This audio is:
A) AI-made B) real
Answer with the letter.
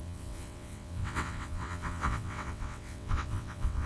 A